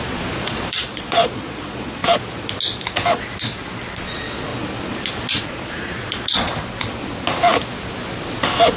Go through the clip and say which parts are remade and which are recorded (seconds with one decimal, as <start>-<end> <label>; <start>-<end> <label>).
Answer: 0.0-2.0 remade; 2.0-4.0 recorded; 4.0-4.5 remade; 4.5-5.4 recorded; 5.4-6.5 remade; 6.5-8.8 recorded